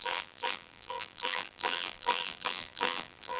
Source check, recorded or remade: remade